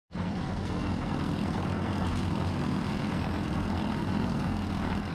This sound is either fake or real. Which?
fake